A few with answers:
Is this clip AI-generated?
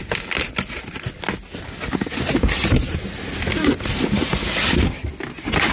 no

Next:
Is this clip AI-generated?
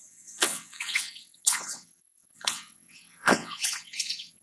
yes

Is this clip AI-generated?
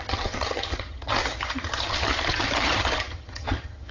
yes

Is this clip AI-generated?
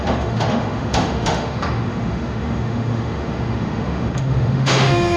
yes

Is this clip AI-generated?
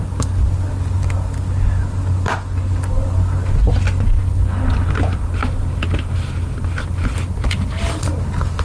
no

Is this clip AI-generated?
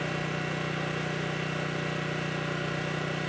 no